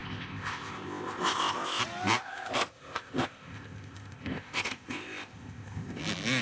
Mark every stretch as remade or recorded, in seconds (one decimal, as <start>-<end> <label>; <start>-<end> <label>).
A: 0.0-1.8 remade; 1.8-2.2 recorded; 2.2-6.0 remade; 6.0-6.4 recorded